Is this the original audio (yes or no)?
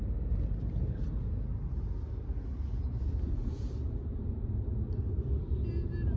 yes